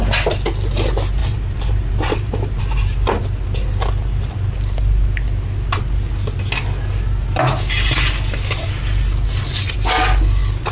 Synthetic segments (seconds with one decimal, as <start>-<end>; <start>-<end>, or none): 1.2-2.6